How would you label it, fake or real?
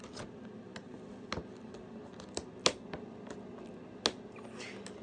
real